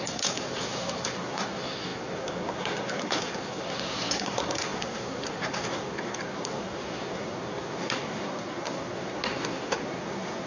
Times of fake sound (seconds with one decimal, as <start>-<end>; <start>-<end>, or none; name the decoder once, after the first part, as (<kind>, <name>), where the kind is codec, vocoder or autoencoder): 0.0-10.5 (codec, SNAC)